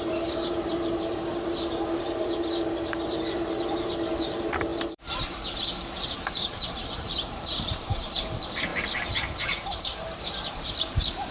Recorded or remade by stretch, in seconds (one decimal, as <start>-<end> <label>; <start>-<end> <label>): 0.0-11.3 remade